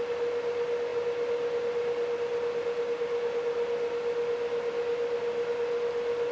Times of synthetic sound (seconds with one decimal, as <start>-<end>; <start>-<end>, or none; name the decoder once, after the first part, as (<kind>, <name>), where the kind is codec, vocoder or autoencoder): none